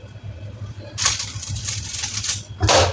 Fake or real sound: real